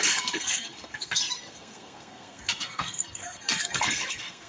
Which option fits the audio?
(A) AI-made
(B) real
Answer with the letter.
A